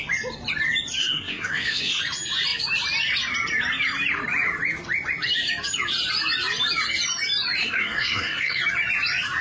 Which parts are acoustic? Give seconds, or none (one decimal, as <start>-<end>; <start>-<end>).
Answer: 0.0-1.0; 2.0-7.6; 8.6-9.4